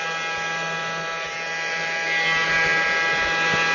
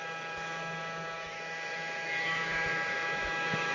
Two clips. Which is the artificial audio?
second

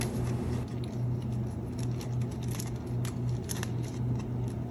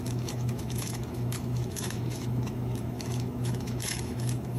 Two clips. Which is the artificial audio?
second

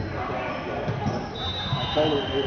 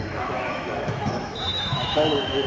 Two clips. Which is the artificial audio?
second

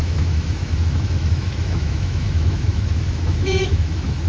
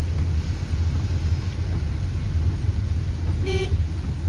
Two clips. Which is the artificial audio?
first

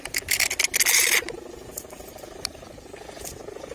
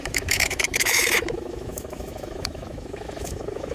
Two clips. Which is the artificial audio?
second